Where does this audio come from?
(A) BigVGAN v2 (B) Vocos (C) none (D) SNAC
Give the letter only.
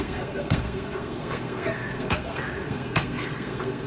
D